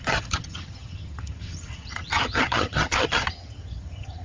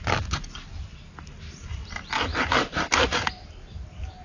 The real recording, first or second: second